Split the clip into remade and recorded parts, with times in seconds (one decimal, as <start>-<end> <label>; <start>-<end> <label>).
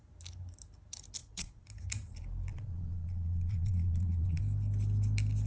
0.0-1.2 recorded; 1.2-1.7 remade; 1.7-2.5 recorded; 2.5-4.4 remade; 4.4-5.5 recorded